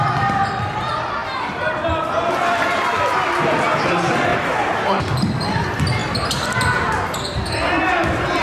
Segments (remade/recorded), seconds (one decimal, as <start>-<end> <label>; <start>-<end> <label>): 0.0-4.3 recorded; 4.3-5.0 remade; 5.0-8.4 recorded